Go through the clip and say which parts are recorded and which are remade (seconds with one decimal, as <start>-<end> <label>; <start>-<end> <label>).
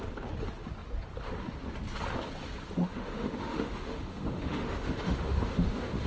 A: 0.0-2.8 recorded; 2.8-6.1 remade